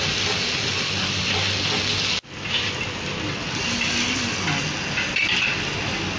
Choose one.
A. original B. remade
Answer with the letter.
A